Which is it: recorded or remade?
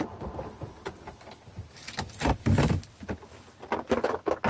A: recorded